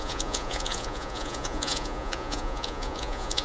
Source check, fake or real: fake